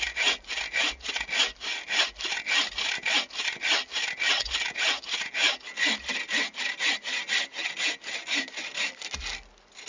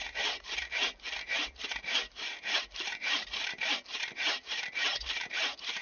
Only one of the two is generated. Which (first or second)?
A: second